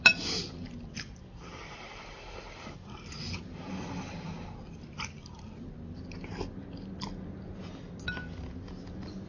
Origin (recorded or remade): recorded